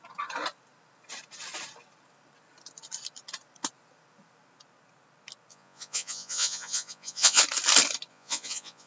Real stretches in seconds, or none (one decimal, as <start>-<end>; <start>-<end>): 0.0-5.5; 7.4-8.1